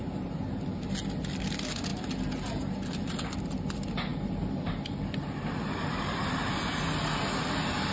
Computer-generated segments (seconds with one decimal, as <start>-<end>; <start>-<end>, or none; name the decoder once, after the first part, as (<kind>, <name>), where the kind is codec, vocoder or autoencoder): 1.9-3.4 (vocoder, BigVGAN v2); 4.1-7.9